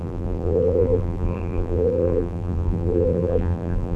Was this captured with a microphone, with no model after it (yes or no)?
no